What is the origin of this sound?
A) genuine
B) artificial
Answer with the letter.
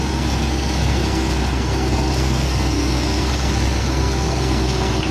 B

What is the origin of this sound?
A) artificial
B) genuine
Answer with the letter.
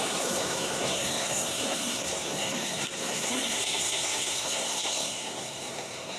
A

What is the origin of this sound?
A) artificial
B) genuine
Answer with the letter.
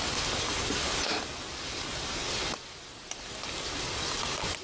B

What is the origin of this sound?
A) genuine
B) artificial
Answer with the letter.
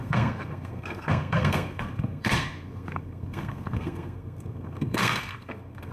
B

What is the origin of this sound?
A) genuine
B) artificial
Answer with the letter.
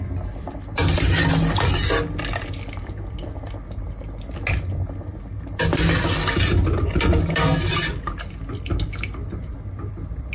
A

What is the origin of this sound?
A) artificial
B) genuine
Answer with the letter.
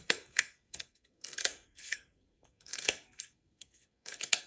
A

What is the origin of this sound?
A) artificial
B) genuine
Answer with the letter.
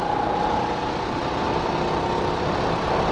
B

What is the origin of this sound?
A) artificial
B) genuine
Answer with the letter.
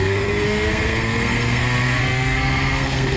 A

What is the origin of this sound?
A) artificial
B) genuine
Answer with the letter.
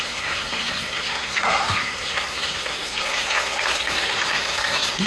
A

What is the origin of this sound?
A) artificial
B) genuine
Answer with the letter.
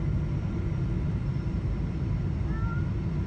B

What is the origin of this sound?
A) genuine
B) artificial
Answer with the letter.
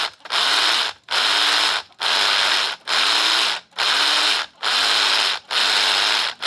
A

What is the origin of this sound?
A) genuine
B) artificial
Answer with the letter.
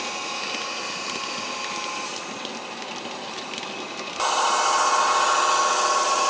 A